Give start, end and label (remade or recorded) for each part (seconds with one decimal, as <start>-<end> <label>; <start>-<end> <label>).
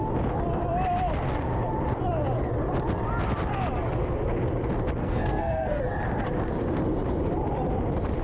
0.0-5.0 recorded; 5.0-5.8 remade; 5.8-8.2 recorded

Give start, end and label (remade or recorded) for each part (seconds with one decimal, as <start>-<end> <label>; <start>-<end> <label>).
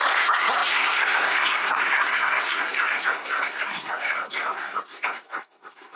0.0-6.0 remade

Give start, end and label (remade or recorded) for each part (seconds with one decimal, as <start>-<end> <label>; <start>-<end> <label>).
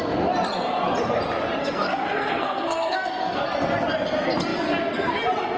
0.0-1.6 recorded; 1.6-3.4 remade; 3.4-5.6 recorded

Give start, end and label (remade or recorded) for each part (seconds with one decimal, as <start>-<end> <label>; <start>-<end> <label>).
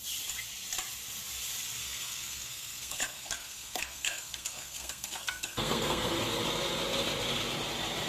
0.0-1.8 recorded; 1.8-6.2 remade; 6.2-8.1 recorded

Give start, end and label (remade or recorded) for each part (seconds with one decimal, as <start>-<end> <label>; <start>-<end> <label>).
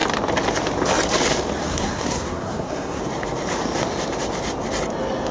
0.0-1.7 recorded; 1.7-3.0 remade; 3.0-5.3 recorded